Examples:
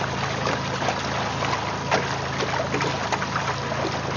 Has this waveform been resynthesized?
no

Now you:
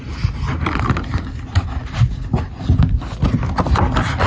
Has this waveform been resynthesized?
no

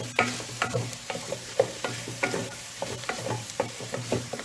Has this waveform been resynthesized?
yes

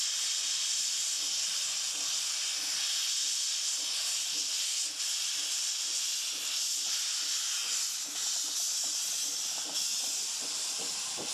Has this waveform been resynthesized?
no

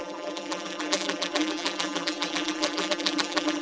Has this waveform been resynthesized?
yes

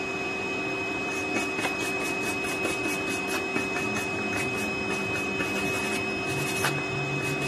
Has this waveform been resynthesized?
no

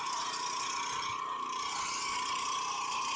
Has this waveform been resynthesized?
no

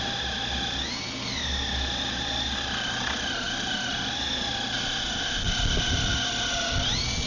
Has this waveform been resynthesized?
no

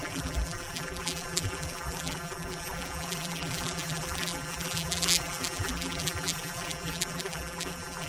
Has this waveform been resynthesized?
yes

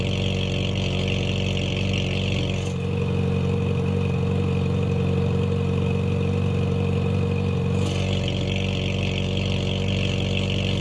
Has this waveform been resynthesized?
no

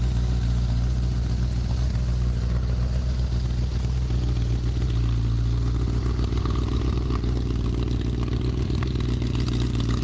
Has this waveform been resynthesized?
no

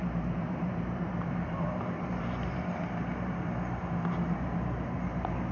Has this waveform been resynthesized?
yes